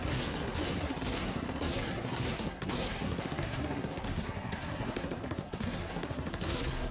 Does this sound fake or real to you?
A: fake